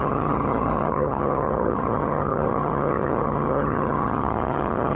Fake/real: fake